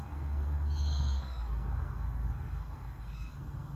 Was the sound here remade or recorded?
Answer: remade